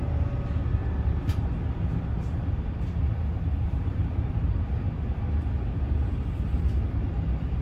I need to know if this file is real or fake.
real